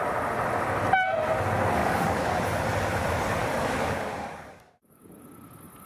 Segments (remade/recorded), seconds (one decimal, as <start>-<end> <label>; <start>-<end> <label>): 0.0-1.8 recorded; 1.8-2.3 remade; 2.3-3.4 recorded; 3.4-5.0 remade; 5.0-5.9 recorded